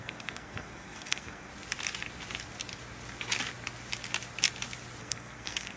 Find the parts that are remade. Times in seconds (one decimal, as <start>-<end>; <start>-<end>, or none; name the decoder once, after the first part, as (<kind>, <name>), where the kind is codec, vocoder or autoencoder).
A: 0.0-1.5 (codec, SNAC); 5.0-5.8